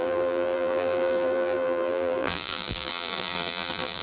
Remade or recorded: remade